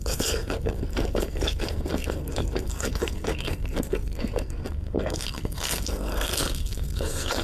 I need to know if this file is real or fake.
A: fake